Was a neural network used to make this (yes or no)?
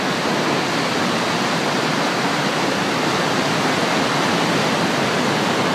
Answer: no